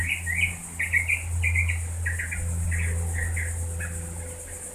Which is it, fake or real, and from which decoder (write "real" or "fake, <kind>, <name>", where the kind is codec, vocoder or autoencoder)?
real